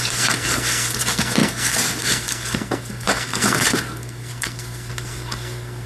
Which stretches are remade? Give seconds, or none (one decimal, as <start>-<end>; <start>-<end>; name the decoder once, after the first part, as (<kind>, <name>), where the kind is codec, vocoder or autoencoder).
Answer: 0.0-5.9 (codec, SNAC)